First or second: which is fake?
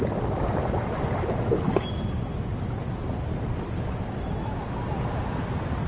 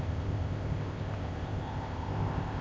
second